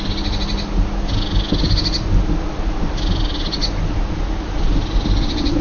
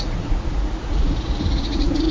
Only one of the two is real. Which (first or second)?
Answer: first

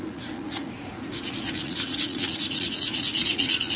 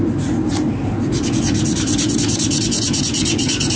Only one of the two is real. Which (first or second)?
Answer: second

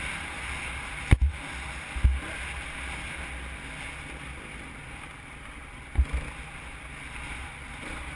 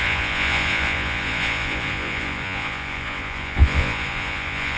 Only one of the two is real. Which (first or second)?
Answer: first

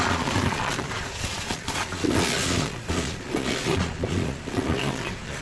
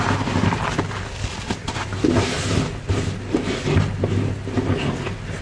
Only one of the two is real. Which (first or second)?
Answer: second